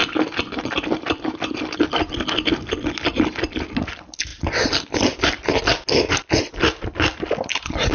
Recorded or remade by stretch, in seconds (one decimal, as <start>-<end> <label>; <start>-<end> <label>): 0.0-7.9 recorded